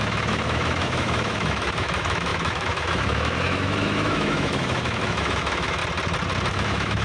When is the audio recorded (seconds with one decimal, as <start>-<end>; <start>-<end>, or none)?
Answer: 5.8-6.5